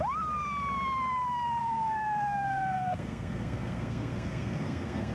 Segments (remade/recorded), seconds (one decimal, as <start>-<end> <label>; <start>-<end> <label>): 0.0-1.6 recorded; 1.6-5.1 remade